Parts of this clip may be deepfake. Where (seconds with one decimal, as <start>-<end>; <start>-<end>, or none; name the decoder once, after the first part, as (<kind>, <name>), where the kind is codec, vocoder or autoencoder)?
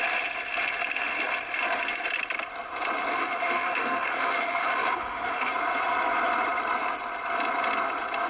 3.1-5.5 (autoencoder, DAC-VAE)